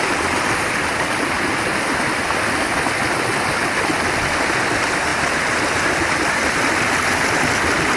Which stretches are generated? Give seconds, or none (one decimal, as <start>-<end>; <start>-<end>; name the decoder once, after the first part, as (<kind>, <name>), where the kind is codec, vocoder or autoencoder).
none